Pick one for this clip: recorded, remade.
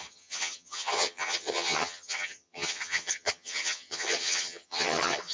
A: remade